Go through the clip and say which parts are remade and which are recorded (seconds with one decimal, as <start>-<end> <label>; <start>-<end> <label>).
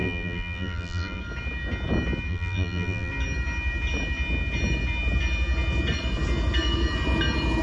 0.0-1.2 remade; 1.2-2.3 recorded; 2.3-3.1 remade; 3.1-7.6 recorded